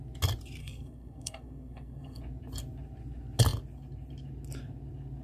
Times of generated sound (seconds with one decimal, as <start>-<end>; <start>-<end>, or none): 0.6-2.2